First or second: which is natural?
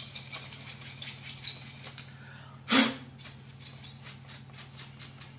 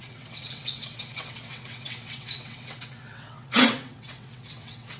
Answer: first